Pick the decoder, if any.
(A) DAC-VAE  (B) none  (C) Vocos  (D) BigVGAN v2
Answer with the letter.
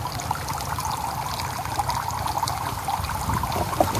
B